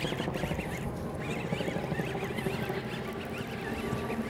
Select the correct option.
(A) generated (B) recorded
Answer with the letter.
B